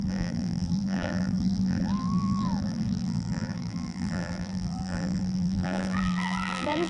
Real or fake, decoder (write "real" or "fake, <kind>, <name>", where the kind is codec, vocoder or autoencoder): fake, vocoder, BigVGAN v2